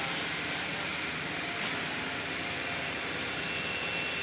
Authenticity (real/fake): fake